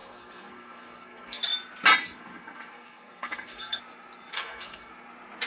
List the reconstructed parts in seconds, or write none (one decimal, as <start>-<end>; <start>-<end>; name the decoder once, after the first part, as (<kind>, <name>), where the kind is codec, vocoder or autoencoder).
0.0-1.4 (codec, SNAC); 2.0-3.8; 4.3-4.9